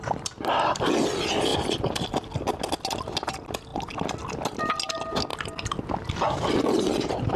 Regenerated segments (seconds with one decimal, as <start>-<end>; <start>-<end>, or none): none